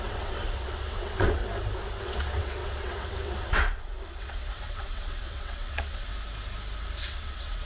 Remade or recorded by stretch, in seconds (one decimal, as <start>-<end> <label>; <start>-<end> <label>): 0.0-1.4 remade; 1.4-2.0 recorded; 2.0-6.1 remade; 6.1-7.0 recorded; 7.0-7.6 remade